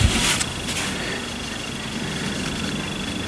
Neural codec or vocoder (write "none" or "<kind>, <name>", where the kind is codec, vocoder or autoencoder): none